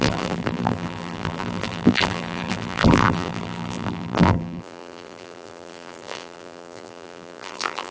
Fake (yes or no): yes